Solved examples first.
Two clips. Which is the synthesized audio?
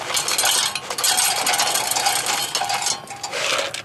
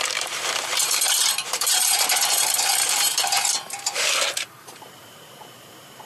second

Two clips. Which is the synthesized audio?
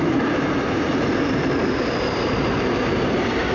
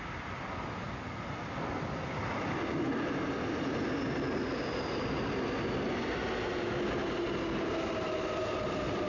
first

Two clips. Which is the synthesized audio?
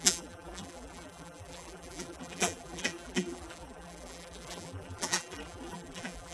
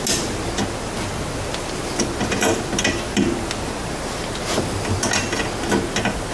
first